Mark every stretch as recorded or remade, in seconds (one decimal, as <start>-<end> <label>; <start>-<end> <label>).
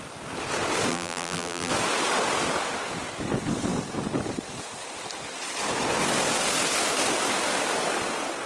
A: 0.0-0.9 recorded; 0.9-1.7 remade; 1.7-8.5 recorded